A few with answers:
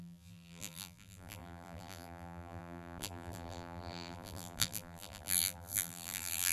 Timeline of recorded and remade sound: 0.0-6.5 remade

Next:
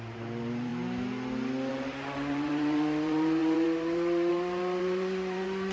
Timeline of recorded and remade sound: 0.0-0.7 remade; 0.7-1.7 recorded; 1.7-5.7 remade

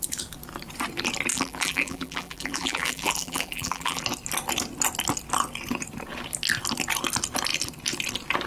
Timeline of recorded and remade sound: 0.0-1.3 recorded; 1.3-4.0 remade; 4.0-8.5 recorded

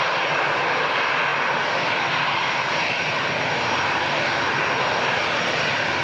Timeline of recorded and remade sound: 0.0-6.0 recorded

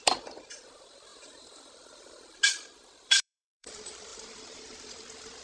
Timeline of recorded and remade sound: 0.0-5.4 remade